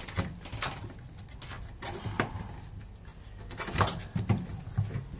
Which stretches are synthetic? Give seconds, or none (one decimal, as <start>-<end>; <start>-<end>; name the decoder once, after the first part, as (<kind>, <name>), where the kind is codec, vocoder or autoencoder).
none

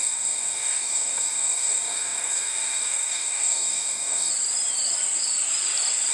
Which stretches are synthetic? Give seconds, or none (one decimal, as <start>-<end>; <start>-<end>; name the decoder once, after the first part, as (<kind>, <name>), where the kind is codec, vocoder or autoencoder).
0.0-4.3 (codec, DAC)

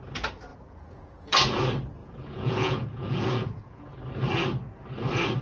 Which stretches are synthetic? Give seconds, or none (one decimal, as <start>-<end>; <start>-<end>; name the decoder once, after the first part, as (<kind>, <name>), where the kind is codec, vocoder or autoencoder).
0.5-1.6 (vocoder, Vocos); 2.0-3.9

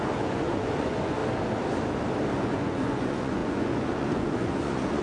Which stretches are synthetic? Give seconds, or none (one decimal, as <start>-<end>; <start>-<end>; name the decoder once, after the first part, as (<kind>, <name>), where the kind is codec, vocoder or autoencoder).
0.0-1.2 (vocoder, Vocos); 2.3-5.0

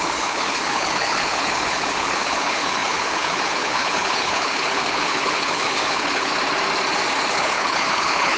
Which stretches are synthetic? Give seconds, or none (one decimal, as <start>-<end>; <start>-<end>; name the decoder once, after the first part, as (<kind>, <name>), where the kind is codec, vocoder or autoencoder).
0.0-6.3 (codec, HILCodec); 7.3-8.4